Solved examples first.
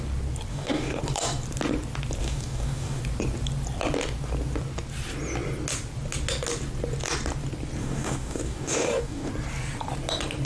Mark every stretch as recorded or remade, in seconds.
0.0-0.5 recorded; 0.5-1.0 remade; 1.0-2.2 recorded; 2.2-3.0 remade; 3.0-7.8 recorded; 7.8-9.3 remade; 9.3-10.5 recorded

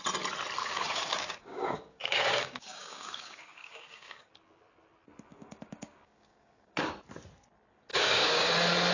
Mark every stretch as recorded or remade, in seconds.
0.0-0.6 recorded; 0.6-4.3 remade; 4.3-5.3 recorded; 5.3-6.9 remade; 6.9-7.9 recorded; 7.9-8.5 remade; 8.5-8.9 recorded